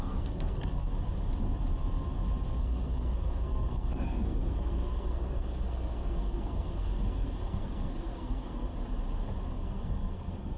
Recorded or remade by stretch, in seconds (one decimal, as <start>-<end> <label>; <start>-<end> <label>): 0.0-0.9 remade; 0.9-2.6 recorded; 2.6-8.7 remade; 8.7-9.5 recorded; 9.5-10.6 remade

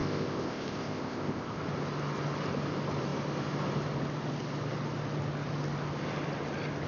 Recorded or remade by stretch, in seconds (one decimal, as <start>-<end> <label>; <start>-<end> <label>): 0.0-1.6 remade; 1.6-6.9 recorded

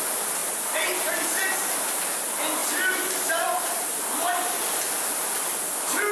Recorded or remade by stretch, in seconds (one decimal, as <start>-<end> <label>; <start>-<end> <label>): 0.0-0.4 recorded; 0.4-1.1 remade; 1.1-2.6 recorded; 2.6-5.6 remade; 5.6-6.1 recorded

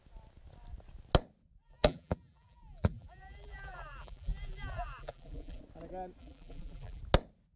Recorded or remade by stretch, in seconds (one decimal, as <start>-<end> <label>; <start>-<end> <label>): 0.0-1.6 recorded; 1.6-5.6 remade; 5.6-6.2 recorded; 6.2-7.0 remade; 7.0-7.6 recorded

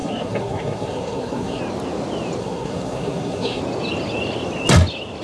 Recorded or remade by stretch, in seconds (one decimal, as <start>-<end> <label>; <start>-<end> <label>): 0.0-1.6 remade; 1.6-2.4 recorded; 2.4-3.6 remade; 3.6-5.2 recorded

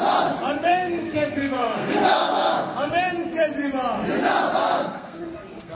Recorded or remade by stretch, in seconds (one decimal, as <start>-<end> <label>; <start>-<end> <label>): 0.0-0.7 recorded; 0.7-2.9 remade; 2.9-4.6 recorded; 4.6-5.7 remade

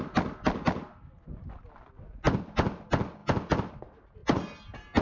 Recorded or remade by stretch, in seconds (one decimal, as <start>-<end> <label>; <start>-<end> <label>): 0.0-5.0 recorded